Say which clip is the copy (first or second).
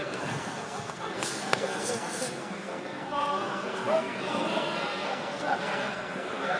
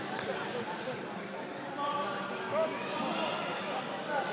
first